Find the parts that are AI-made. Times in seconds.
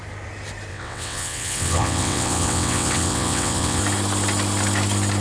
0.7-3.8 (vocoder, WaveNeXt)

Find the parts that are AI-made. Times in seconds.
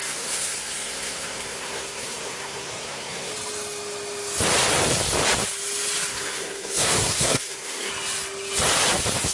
0.0-3.3 (codec, SNAC); 6.1-7.9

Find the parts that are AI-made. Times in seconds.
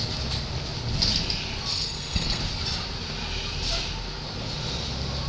1.7-2.4 (codec, SNAC)